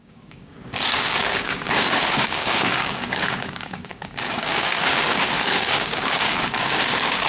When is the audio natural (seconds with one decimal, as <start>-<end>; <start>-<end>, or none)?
none